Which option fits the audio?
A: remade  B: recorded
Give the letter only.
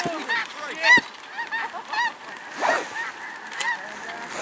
B